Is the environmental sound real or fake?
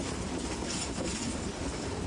fake